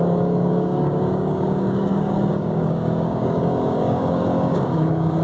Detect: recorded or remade remade